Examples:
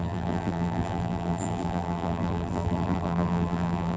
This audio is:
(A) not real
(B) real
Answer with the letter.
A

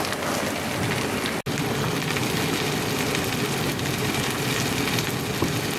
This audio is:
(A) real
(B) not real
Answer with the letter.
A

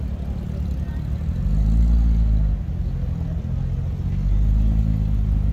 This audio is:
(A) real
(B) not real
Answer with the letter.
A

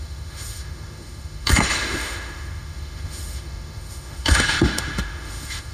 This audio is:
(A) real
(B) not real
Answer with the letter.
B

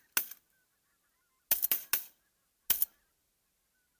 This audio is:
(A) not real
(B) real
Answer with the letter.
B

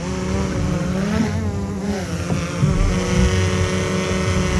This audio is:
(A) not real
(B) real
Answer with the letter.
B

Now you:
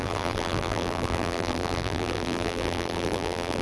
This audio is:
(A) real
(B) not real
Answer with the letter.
B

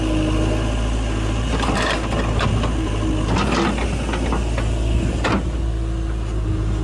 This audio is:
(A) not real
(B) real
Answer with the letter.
B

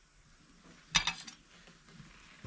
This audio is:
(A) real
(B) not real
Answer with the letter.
A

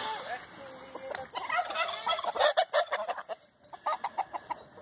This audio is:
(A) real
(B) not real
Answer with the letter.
A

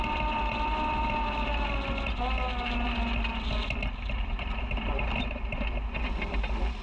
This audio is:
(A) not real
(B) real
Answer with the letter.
B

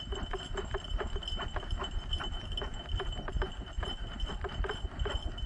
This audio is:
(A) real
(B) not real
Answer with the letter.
A